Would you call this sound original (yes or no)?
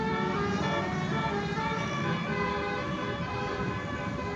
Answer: yes